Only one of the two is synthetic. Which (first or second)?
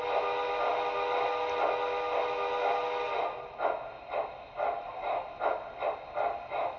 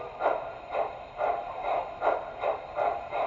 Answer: second